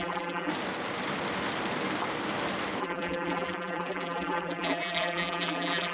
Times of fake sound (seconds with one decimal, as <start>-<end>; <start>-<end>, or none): 0.0-0.5; 2.8-5.9